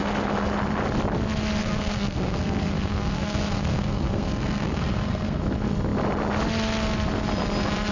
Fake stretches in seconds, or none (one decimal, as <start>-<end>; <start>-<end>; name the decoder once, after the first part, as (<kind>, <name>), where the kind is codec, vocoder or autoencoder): 1.6-5.4 (codec, SNAC)